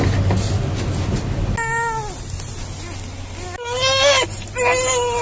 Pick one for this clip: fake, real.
real